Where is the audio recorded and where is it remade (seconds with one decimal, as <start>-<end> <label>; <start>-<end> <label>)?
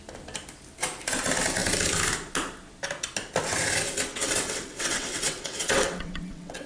0.0-4.1 recorded; 4.1-6.7 remade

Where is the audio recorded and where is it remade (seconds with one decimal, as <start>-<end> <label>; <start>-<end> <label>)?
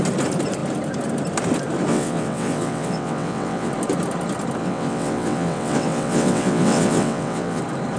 0.0-1.9 recorded; 1.9-3.7 remade; 3.7-4.6 recorded; 4.6-7.6 remade; 7.6-8.0 recorded